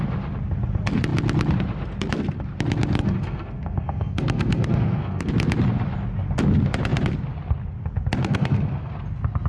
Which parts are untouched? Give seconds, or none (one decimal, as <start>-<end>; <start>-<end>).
0.0-3.0; 5.3-8.2; 8.9-9.5